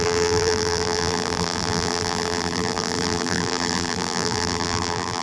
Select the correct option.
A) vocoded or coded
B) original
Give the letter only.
A